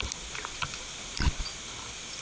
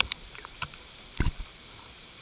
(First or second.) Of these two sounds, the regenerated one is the second